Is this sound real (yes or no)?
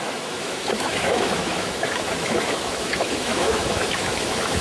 no